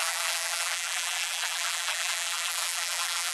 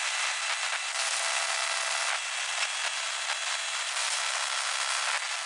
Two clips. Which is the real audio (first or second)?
second